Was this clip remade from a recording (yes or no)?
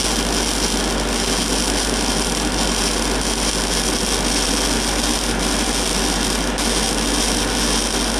no